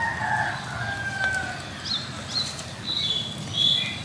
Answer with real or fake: real